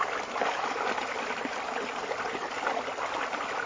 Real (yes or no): yes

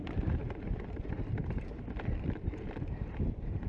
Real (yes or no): no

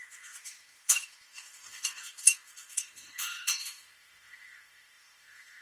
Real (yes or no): no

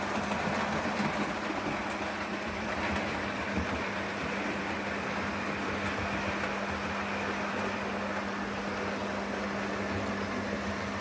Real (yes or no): yes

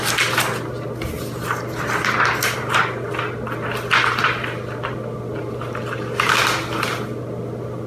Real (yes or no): yes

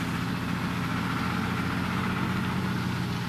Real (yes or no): yes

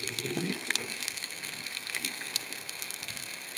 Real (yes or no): no